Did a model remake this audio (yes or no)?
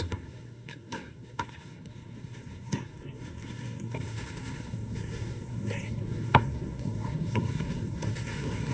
yes